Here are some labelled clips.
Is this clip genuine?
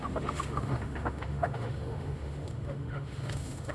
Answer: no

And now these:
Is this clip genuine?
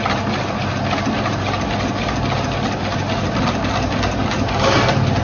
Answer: yes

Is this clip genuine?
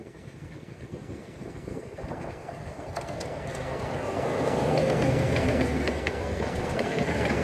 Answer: no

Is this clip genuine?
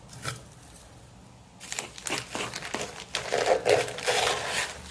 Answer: yes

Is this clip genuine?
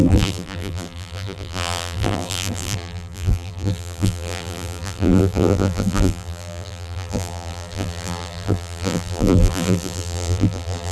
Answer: no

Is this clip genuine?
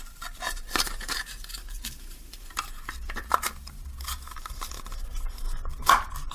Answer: no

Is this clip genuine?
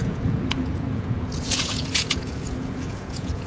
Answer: no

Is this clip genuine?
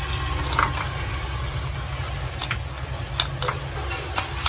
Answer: yes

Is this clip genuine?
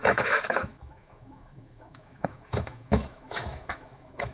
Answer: no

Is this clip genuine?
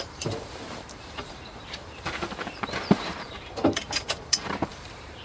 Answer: no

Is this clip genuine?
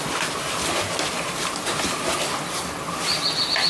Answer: yes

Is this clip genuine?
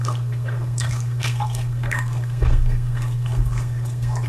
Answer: no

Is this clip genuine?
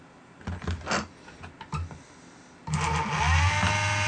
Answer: yes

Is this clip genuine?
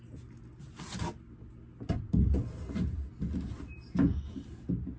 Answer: yes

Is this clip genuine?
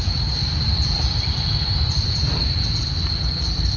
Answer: no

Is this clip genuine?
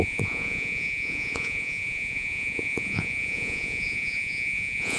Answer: no